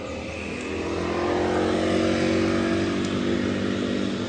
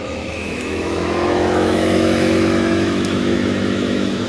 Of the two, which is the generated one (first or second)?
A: second